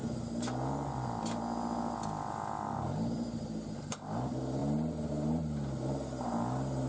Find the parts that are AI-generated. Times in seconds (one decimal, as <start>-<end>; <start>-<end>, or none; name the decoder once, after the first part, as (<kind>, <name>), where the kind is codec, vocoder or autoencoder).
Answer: none